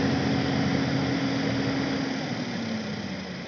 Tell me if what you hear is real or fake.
real